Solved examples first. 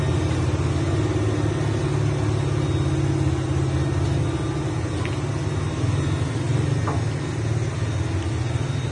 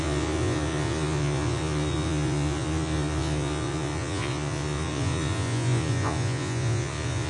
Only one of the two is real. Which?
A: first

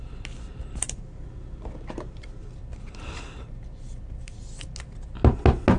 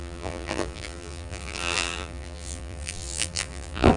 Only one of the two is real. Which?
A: first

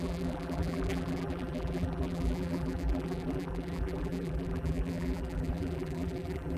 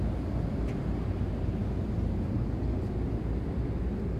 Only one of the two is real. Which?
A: second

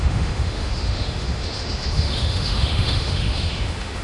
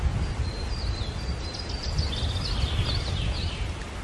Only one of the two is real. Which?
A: second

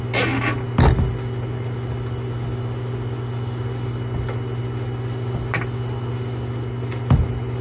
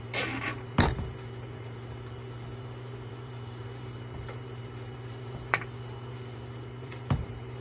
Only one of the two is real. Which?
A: first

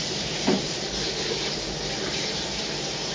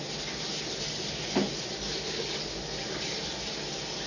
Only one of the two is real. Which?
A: second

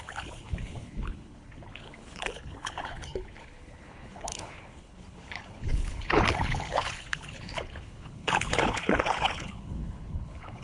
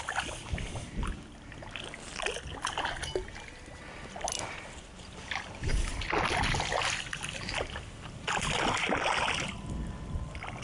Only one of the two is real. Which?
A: second